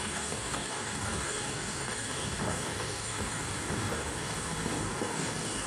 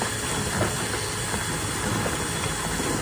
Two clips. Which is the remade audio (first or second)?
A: first